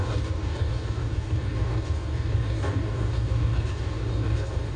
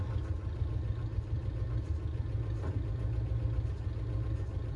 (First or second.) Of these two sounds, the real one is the second